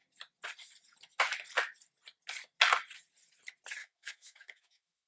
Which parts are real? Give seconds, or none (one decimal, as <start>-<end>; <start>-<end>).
0.0-3.8